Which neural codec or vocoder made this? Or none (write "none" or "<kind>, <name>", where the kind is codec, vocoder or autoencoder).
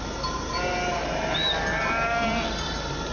none